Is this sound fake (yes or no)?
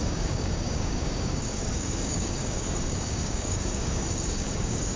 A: yes